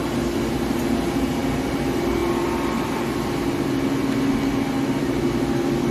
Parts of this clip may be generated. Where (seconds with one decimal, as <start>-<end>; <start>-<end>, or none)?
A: none